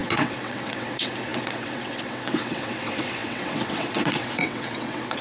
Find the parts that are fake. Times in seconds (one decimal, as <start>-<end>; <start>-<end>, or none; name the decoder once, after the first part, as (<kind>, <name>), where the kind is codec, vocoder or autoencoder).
0.0-5.2 (vocoder, WaveNeXt)